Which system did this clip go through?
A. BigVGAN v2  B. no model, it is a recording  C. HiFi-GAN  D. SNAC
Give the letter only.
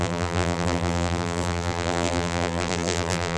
A